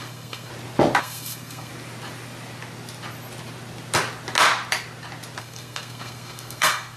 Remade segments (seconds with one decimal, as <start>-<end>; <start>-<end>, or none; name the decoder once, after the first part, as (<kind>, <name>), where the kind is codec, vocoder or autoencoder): 0.0-0.5 (codec, SNAC); 1.0-1.7; 5.4-7.0